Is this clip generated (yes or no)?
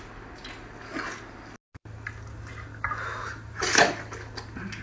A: no